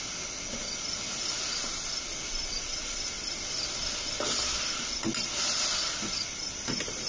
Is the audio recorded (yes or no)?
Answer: yes